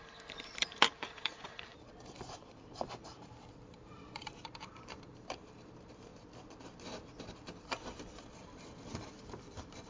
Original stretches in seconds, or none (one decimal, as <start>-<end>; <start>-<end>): 6.1-8.4

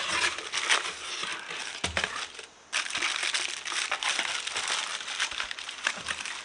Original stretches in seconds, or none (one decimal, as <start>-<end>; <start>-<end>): 0.0-4.9; 5.8-6.4

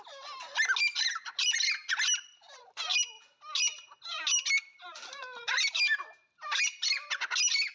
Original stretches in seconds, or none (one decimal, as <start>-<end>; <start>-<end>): 0.0-4.9; 6.9-7.7

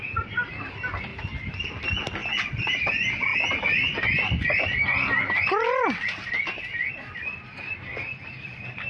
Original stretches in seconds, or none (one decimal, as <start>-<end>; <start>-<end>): 2.2-2.8; 3.3-6.9

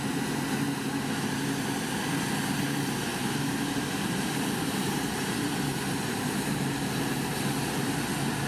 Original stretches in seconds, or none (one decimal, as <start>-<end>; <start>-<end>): 0.0-3.1; 6.2-8.5

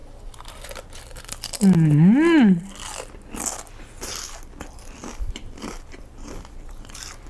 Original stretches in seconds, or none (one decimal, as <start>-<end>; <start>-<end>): 0.0-5.0